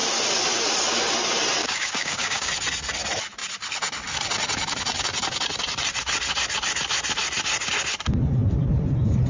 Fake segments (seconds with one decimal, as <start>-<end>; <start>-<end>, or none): 1.6-2.5